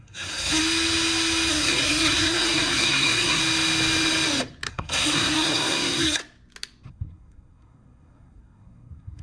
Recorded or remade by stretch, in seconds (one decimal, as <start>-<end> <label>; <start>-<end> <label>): 0.0-0.6 remade; 0.6-1.5 recorded; 1.5-3.4 remade; 3.4-4.7 recorded; 4.7-6.2 remade; 6.2-6.9 recorded; 6.9-9.2 remade